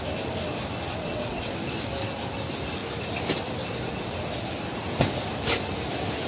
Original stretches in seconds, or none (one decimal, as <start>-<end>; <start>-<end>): 0.0-0.9; 1.5-6.3

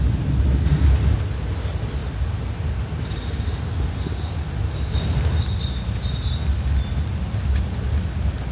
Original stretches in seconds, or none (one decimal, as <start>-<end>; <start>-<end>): 0.0-8.5